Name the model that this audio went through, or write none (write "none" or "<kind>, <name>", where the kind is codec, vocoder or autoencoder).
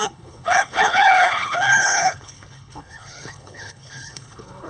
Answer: codec, HILCodec